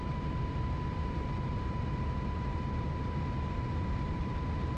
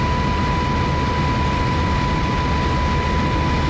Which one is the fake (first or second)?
first